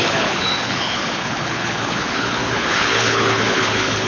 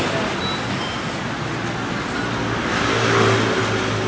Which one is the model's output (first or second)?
first